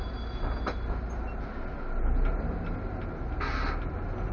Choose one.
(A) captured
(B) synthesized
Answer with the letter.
A